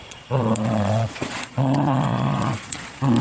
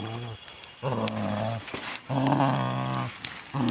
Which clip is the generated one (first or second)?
first